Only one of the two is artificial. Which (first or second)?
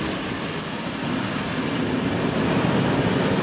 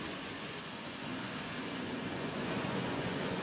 second